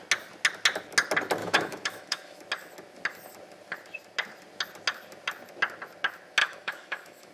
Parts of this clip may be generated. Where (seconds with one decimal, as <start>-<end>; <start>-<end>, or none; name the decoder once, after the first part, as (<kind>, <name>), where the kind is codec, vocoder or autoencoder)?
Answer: 1.4-2.4 (autoencoder, DAC-VAE); 6.4-7.3